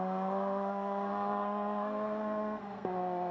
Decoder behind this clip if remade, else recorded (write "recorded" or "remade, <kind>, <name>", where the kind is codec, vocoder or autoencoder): remade, codec, SNAC